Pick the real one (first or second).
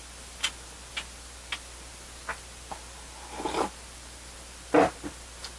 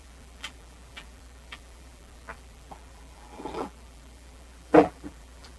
first